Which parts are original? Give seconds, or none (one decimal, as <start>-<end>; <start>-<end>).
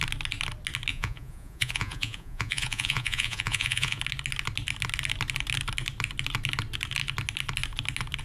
0.0-0.9; 4.0-8.2